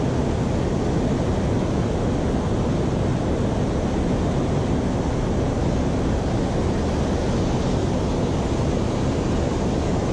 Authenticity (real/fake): real